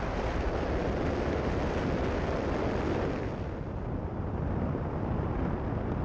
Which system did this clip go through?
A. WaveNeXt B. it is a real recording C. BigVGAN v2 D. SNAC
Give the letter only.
B